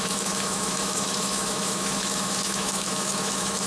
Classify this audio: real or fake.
fake